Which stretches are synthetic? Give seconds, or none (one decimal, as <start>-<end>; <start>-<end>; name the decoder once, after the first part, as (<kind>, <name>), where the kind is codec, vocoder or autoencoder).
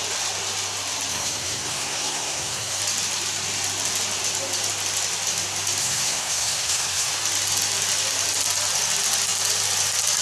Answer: 1.1-2.8 (codec, SNAC); 5.8-7.1